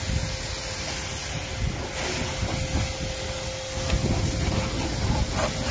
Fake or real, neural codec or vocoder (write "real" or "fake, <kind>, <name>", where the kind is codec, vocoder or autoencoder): real